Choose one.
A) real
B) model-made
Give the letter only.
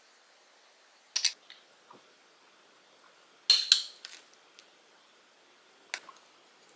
A